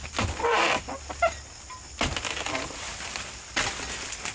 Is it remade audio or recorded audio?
recorded